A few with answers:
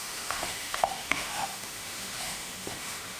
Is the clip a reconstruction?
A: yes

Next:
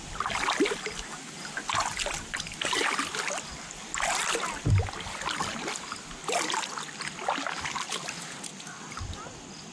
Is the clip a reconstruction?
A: no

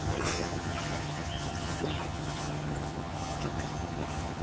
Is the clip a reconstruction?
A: yes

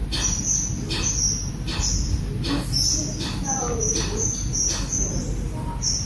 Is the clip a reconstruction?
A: no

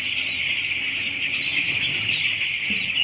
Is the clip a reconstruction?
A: no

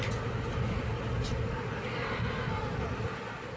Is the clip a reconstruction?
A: no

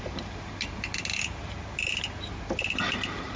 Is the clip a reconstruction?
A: no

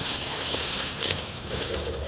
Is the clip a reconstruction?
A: yes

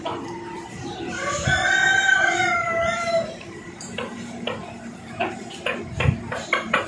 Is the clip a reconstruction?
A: yes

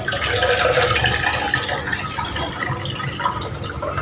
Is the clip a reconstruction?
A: no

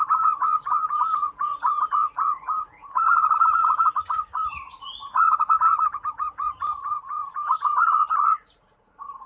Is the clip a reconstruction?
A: yes